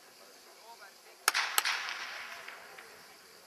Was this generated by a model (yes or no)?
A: no